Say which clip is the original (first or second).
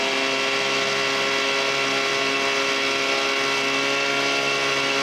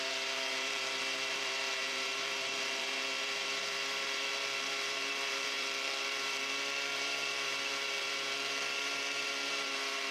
first